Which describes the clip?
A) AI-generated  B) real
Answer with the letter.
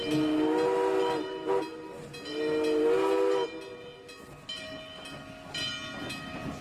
B